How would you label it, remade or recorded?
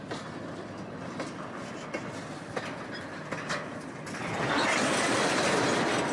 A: recorded